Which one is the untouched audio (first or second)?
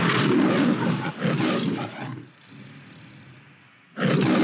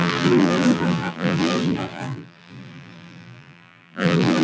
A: first